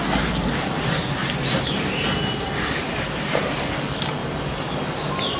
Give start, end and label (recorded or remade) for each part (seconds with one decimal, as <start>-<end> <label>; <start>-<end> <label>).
0.0-1.2 recorded; 1.2-3.5 remade; 3.5-4.2 recorded; 4.2-5.4 remade